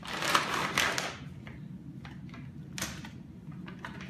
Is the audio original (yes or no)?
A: yes